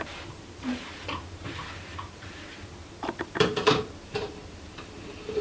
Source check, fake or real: fake